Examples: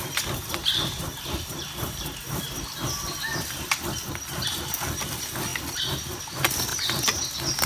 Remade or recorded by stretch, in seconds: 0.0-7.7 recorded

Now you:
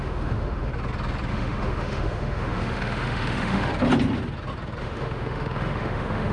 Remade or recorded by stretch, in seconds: 0.0-0.7 remade; 0.7-1.3 recorded; 1.3-3.7 remade; 3.7-4.8 recorded; 4.8-6.3 remade

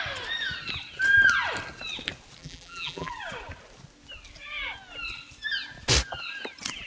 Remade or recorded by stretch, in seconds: 0.0-2.4 recorded; 2.4-3.1 remade; 3.1-6.9 recorded

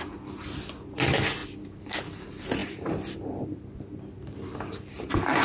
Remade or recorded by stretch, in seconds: 0.0-5.4 recorded

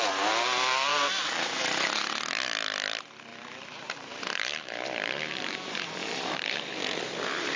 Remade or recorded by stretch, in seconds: 0.0-0.9 recorded; 0.9-1.6 remade; 1.6-3.3 recorded; 3.3-7.6 remade